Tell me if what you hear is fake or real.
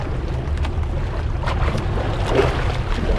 real